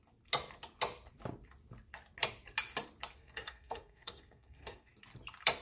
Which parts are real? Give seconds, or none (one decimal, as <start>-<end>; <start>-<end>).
0.0-3.2; 4.9-5.6